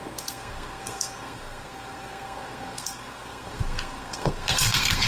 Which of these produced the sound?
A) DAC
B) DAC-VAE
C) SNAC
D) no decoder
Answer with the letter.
C